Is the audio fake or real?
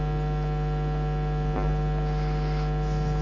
real